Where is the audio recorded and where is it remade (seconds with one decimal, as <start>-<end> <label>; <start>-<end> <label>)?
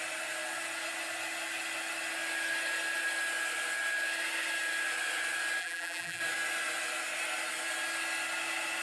0.0-5.6 recorded; 5.6-6.2 remade; 6.2-8.8 recorded